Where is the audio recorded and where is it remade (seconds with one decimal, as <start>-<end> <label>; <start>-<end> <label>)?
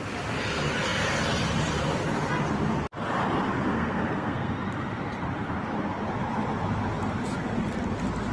0.0-3.7 recorded; 3.7-4.5 remade; 4.5-8.3 recorded